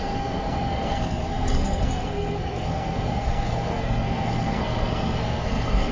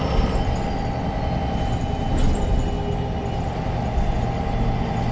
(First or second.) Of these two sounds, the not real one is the first